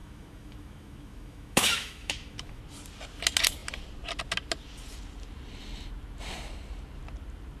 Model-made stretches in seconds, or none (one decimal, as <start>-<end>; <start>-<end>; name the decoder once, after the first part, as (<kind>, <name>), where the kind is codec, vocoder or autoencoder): 0.0-2.6 (autoencoder, DAC-VAE)